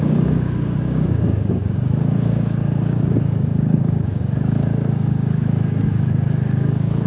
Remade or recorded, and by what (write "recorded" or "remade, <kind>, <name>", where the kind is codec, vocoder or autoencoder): remade, codec, DAC